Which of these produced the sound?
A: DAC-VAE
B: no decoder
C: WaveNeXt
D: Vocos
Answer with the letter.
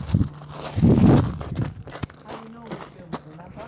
B